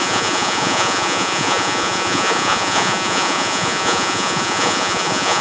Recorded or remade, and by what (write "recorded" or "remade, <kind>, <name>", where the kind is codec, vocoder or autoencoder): remade, vocoder, Vocos